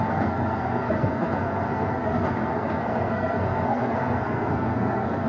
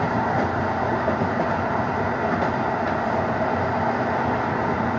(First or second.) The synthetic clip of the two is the first